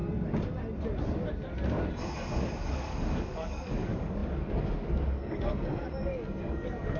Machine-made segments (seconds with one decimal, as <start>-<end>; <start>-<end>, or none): 2.6-7.0